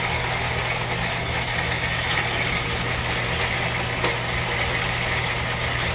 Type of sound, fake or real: real